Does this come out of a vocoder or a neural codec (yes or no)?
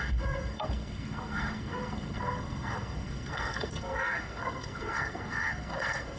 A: yes